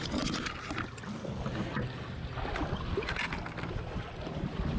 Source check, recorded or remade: recorded